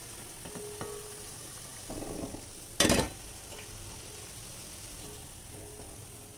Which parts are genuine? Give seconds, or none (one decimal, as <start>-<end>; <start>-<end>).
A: 0.0-6.4